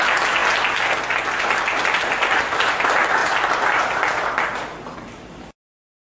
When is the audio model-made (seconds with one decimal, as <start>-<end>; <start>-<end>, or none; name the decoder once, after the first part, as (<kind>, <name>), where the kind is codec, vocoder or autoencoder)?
3.2-3.8 (vocoder, BigVGAN v2); 4.5-6.1